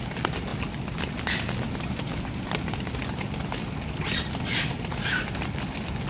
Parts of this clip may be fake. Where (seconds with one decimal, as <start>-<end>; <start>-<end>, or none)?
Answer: none